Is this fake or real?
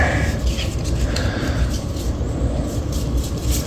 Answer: real